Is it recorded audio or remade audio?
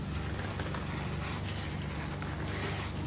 recorded